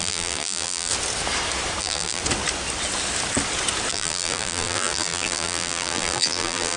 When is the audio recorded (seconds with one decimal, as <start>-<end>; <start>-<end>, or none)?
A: 0.9-1.8; 2.2-3.9